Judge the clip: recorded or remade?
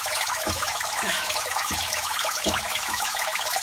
remade